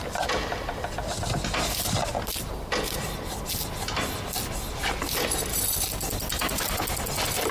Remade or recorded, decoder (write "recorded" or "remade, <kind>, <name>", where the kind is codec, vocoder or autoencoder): recorded